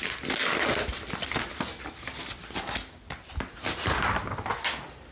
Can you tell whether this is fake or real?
real